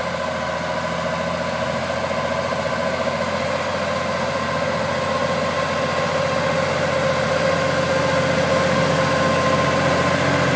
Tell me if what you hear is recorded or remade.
recorded